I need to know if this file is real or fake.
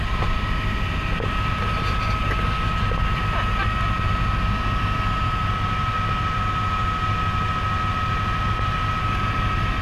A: real